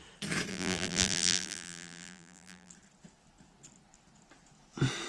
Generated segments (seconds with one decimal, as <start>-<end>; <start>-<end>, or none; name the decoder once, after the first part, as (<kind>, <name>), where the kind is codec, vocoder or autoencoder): 0.5-2.7 (vocoder, BigVGAN v2)